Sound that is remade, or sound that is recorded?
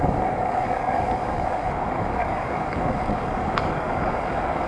remade